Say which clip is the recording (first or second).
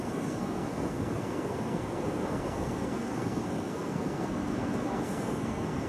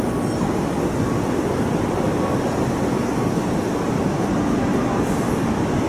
second